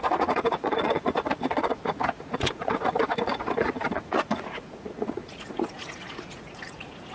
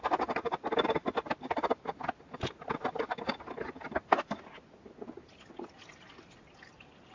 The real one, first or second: second